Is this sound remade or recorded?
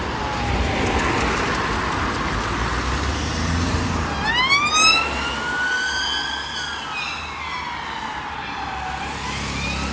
recorded